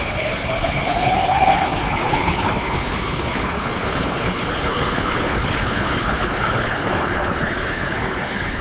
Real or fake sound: fake